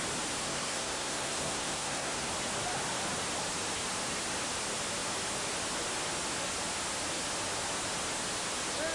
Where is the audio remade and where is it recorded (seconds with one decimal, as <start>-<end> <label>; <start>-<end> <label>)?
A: 0.0-0.4 recorded; 0.4-2.3 remade; 2.3-8.9 recorded